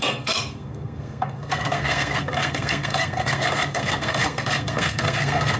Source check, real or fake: fake